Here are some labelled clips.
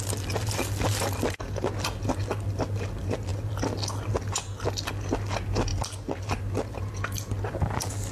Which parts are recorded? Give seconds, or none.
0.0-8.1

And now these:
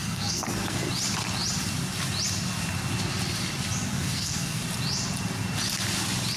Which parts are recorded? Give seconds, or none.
0.9-3.9; 4.6-6.4

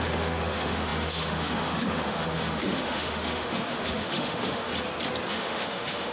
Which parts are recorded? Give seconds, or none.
4.7-5.3

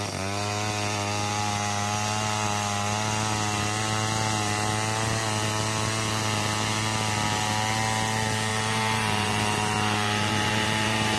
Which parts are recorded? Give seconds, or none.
0.0-8.5

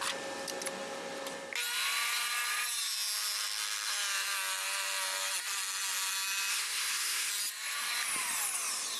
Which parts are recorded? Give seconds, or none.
0.0-6.5; 7.3-9.0

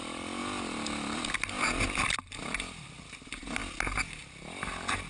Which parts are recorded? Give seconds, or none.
0.4-2.1; 3.6-5.1

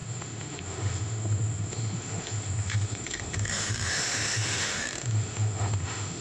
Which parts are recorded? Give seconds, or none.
none

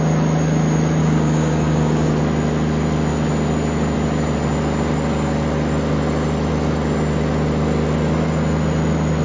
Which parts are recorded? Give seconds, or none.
0.0-1.0; 2.2-9.2